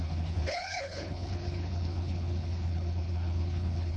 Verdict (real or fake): fake